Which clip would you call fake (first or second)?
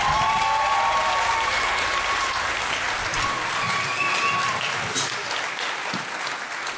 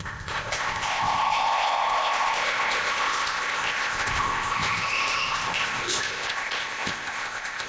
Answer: second